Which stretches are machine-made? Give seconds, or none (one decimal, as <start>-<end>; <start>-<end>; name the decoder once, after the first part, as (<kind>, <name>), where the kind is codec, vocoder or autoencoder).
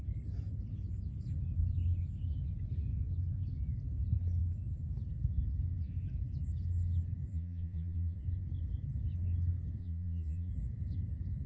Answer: 7.3-8.2 (vocoder, Vocos); 9.8-10.5